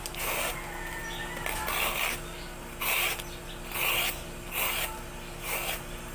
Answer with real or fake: real